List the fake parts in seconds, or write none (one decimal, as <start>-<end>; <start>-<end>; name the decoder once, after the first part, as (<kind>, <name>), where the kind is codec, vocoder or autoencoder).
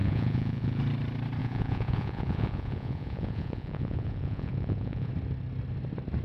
0.0-0.8 (vocoder, Vocos); 1.4-5.1